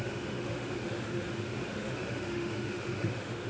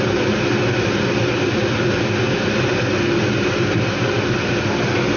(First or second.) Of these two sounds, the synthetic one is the first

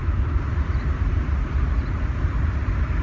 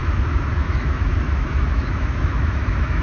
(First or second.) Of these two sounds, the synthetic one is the second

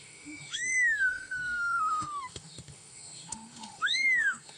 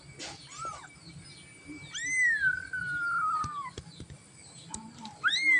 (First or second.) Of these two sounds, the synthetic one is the first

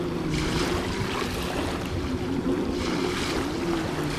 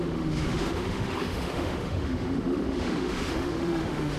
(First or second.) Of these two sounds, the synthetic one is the second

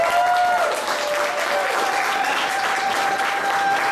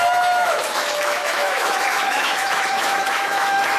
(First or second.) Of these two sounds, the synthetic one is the second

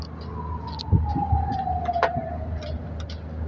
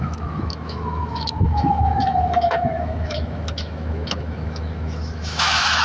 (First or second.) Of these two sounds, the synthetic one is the second